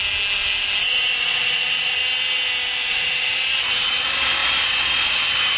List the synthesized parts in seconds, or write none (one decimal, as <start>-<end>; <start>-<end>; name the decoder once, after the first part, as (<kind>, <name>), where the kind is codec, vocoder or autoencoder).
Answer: 0.8-2.0 (vocoder, Vocos); 2.9-5.6